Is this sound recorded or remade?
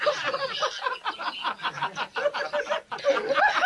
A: recorded